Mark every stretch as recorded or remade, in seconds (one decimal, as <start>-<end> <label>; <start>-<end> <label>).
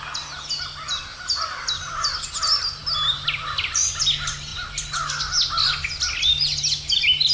0.0-1.1 recorded; 1.1-2.1 remade; 2.1-7.3 recorded